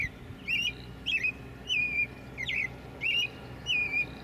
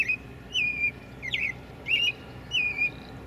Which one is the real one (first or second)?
first